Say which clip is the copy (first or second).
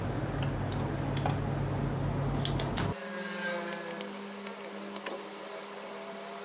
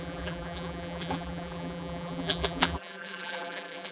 second